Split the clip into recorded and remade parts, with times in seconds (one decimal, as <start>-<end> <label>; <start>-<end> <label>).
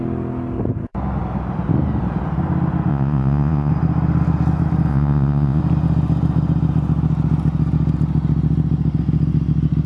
0.0-2.9 recorded; 2.9-3.7 remade; 3.7-4.9 recorded; 4.9-5.6 remade; 5.6-9.9 recorded